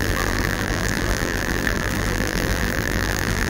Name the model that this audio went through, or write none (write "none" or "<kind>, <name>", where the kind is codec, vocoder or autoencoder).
vocoder, BigVGAN v2